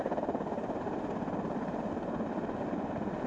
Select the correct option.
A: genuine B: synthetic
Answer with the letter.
A